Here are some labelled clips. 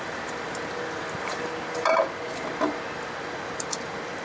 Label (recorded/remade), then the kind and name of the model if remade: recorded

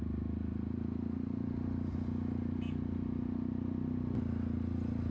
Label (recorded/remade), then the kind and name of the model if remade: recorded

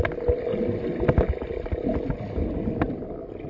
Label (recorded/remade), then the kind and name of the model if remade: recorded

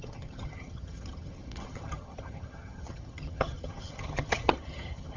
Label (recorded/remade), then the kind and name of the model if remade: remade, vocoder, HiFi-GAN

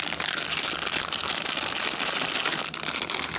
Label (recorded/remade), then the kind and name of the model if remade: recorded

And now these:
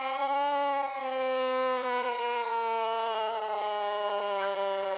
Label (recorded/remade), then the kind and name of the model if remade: remade, vocoder, HiFi-GAN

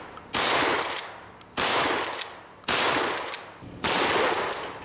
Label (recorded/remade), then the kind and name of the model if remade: recorded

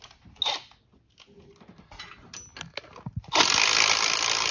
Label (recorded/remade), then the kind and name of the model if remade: recorded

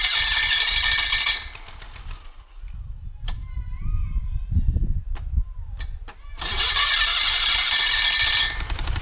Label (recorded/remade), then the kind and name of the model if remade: recorded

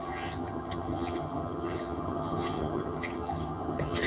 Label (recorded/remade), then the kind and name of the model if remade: remade, vocoder, HiFi-GAN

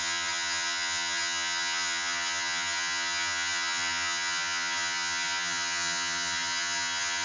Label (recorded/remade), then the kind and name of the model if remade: remade, vocoder, HiFi-GAN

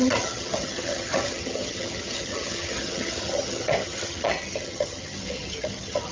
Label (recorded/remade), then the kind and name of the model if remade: remade, vocoder, HiFi-GAN